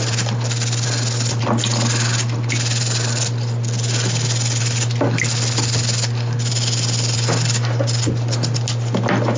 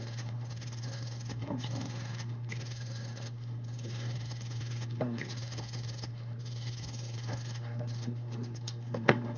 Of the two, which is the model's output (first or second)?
second